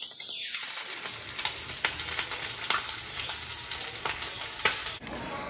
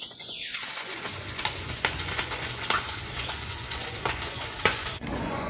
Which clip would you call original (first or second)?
first